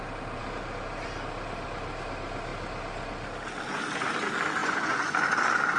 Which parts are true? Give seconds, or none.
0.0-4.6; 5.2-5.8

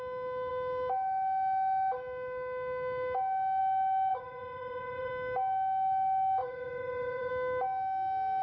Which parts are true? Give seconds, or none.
0.0-4.1; 5.1-6.4; 7.3-8.4